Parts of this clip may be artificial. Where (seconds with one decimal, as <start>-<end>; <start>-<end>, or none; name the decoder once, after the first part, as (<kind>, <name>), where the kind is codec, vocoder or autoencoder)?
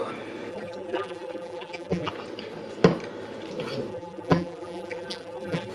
0.5-2.1 (vocoder, BigVGAN v2); 3.9-5.7